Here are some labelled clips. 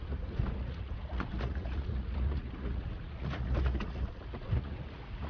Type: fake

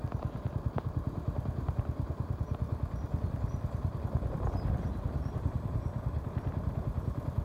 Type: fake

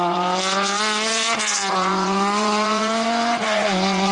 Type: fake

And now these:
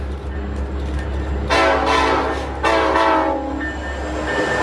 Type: real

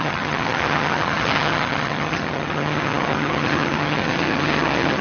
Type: fake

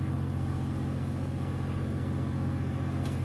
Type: fake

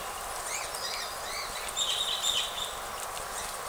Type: real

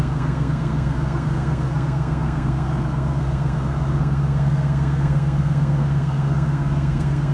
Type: fake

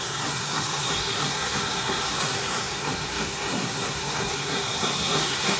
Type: fake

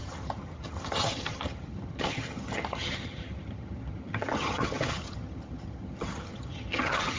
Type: fake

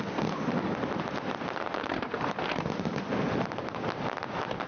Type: real